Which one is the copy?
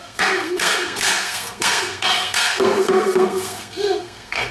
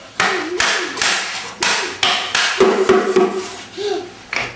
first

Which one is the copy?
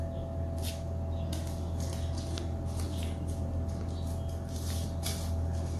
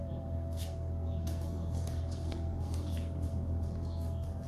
second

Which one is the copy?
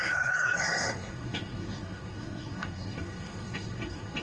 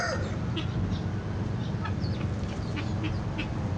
first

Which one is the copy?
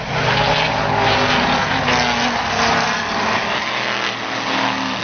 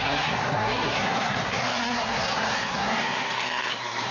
second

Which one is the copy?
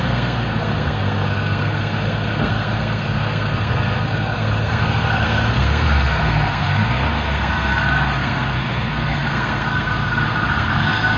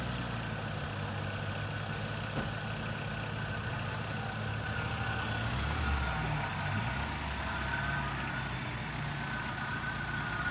first